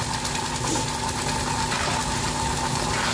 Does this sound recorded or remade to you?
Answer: recorded